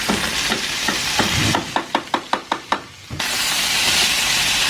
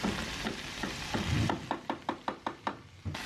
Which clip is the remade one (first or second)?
first